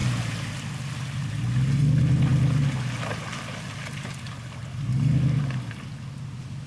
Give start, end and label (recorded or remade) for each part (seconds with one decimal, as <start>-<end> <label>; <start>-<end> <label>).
0.0-6.7 recorded